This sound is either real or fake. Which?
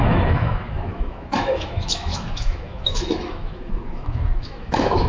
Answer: fake